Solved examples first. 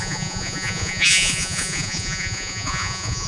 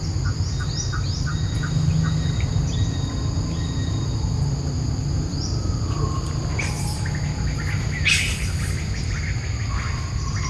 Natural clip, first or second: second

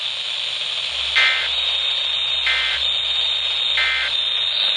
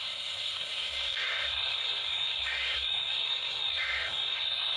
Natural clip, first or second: first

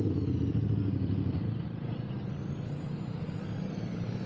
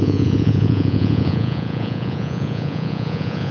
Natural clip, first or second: first